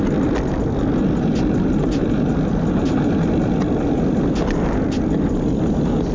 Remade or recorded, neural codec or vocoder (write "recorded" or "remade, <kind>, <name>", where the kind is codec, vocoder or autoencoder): recorded